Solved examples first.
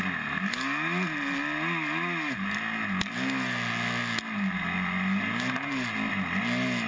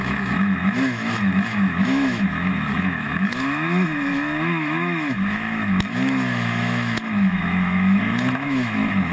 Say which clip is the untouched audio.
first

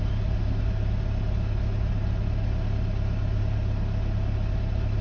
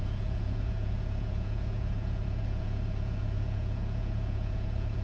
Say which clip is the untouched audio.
first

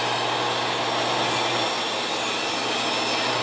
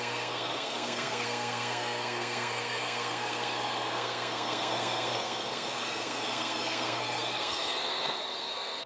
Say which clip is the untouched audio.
first